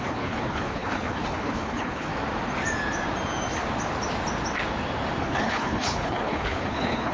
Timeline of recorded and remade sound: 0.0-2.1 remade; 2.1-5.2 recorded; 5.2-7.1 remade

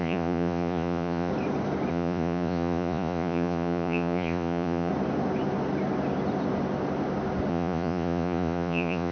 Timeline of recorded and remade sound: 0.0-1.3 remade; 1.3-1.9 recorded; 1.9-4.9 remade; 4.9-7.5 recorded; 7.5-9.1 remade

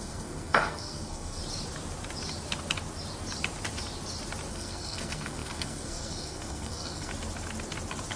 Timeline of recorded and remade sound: 0.0-1.4 remade; 1.4-4.5 recorded; 4.5-7.1 remade; 7.1-8.2 recorded

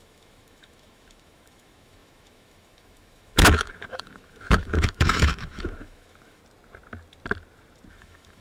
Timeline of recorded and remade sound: 0.0-6.4 remade; 6.4-7.9 recorded; 7.9-8.4 remade

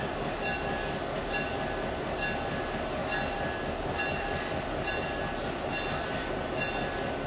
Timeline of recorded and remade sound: 0.0-7.3 recorded